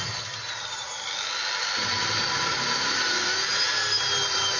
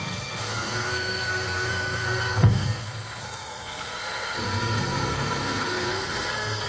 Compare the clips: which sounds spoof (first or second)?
second